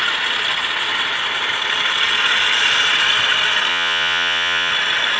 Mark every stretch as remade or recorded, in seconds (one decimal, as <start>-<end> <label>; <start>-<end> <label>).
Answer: 0.0-3.7 recorded; 3.7-4.7 remade; 4.7-5.2 recorded